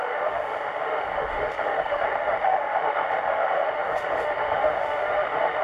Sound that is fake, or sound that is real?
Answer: fake